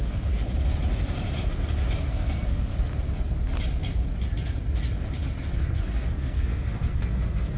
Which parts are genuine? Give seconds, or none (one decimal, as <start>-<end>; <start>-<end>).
0.4-2.1; 2.7-5.5